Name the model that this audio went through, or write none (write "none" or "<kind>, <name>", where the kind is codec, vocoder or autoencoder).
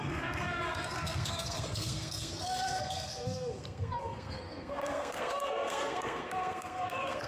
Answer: codec, SNAC